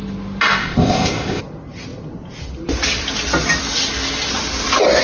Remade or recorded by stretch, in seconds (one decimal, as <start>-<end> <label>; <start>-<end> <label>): 0.0-0.6 recorded; 0.6-1.4 remade; 1.4-5.0 recorded